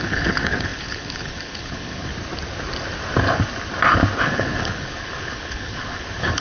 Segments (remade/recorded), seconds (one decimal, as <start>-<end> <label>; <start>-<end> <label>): 0.0-2.1 remade; 2.1-4.2 recorded; 4.2-6.4 remade